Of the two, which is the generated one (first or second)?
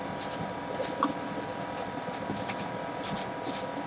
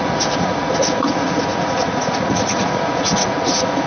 second